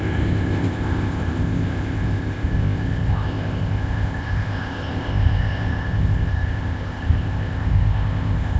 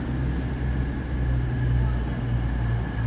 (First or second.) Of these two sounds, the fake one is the first